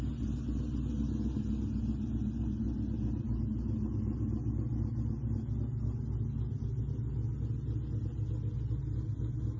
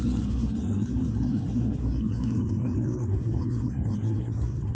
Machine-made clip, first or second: second